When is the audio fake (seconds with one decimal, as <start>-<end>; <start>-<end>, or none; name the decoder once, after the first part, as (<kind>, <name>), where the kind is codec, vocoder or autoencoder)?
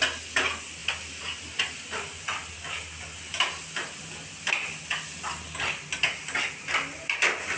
none